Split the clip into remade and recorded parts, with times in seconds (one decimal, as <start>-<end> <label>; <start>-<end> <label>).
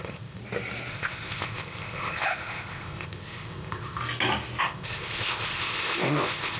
0.0-0.4 remade; 0.4-0.9 recorded; 0.9-4.0 remade; 4.0-4.6 recorded; 4.6-6.6 remade